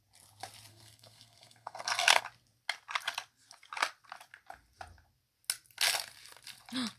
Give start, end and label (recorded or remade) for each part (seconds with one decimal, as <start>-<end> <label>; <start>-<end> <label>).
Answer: 0.0-0.7 recorded; 0.7-2.2 remade; 2.2-7.0 recorded